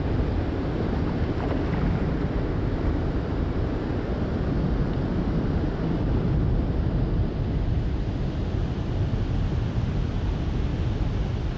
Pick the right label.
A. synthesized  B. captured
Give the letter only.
B